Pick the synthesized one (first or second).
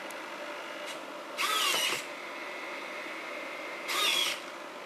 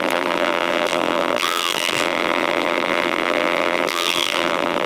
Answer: second